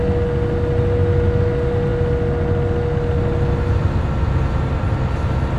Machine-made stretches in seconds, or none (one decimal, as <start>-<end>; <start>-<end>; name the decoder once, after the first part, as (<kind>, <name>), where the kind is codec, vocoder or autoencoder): none